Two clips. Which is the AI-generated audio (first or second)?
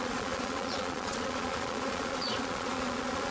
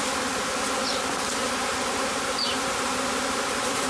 first